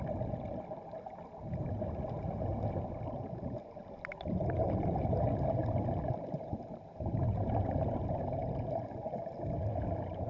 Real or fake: real